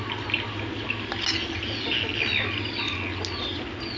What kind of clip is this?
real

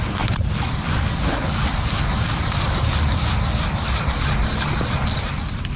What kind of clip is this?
real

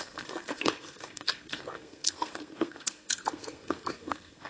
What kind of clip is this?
fake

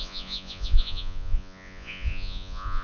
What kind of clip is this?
fake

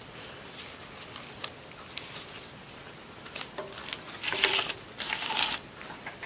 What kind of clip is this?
real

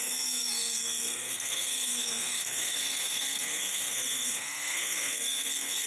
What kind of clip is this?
fake